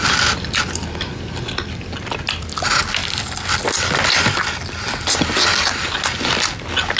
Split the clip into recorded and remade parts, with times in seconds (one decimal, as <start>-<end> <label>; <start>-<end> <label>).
0.0-3.0 recorded; 3.0-4.6 remade; 4.6-7.0 recorded